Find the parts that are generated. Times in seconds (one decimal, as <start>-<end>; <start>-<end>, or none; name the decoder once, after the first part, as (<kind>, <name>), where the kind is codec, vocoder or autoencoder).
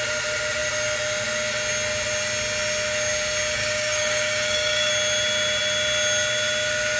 3.6-4.9 (codec, DAC)